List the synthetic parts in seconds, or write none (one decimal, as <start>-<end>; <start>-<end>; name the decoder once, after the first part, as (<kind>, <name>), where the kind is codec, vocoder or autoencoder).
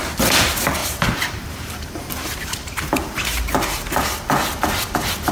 0.8-4.0 (vocoder, BigVGAN v2)